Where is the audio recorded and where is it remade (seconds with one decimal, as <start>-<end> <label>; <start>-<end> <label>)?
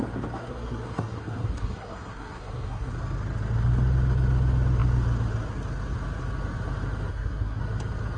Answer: 0.0-0.4 recorded; 0.4-2.9 remade; 2.9-7.1 recorded; 7.1-7.6 remade; 7.6-8.2 recorded